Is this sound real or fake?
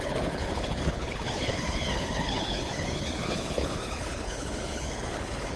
fake